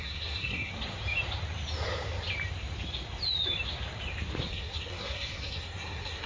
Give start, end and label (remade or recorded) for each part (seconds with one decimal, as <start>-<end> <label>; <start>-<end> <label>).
0.0-0.7 remade; 0.7-4.5 recorded; 4.5-6.3 remade